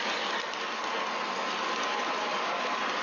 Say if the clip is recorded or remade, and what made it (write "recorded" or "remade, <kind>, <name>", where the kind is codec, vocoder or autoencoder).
recorded